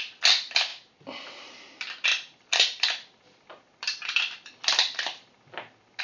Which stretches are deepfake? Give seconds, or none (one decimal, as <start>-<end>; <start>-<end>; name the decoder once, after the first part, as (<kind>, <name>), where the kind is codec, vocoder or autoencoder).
0.0-6.0 (vocoder, BigVGAN v2)